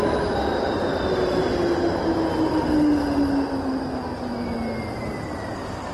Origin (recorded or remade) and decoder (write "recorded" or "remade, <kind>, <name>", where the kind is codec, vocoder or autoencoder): recorded